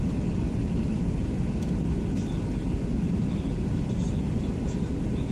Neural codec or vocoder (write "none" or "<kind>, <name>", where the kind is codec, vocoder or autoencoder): none